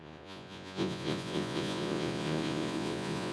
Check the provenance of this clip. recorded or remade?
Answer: remade